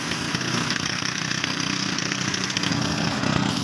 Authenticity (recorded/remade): remade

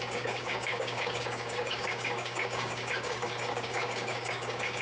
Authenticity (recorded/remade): remade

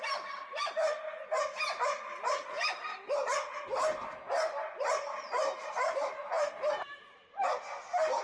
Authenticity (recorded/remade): recorded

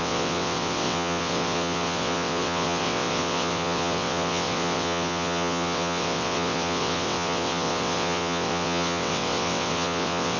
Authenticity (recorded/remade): remade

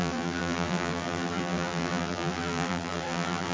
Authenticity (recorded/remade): remade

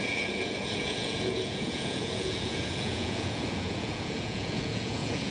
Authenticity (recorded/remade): remade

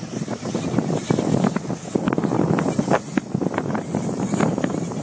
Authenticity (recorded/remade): recorded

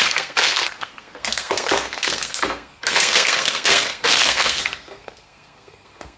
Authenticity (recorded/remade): remade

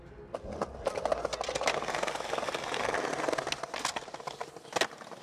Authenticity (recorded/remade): recorded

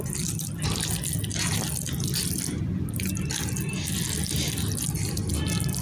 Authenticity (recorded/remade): recorded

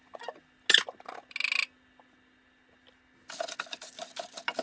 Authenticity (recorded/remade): recorded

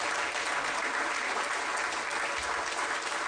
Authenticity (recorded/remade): recorded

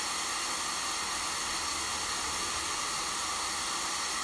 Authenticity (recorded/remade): recorded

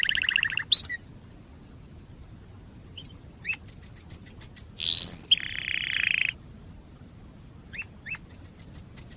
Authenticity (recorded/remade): recorded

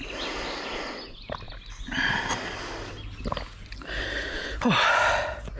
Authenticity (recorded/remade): recorded